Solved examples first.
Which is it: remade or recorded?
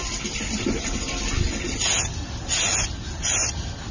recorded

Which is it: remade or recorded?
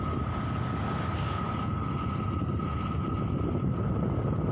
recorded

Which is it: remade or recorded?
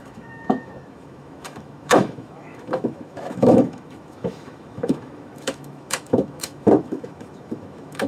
remade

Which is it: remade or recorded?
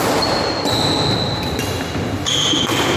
recorded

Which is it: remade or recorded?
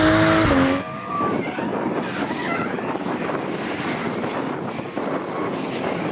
recorded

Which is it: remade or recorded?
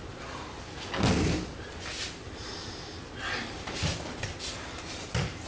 recorded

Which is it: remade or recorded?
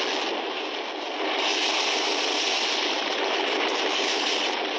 recorded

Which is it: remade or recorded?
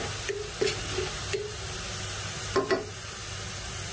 recorded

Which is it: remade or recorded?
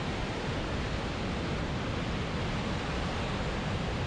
recorded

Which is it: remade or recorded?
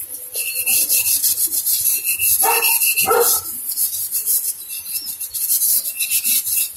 remade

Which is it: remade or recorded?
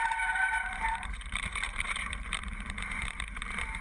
remade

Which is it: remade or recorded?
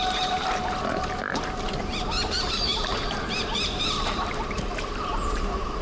remade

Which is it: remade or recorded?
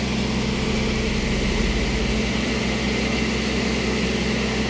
recorded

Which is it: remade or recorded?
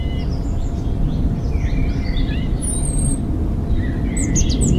recorded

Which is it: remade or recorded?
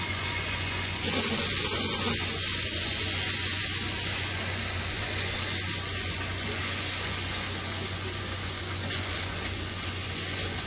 remade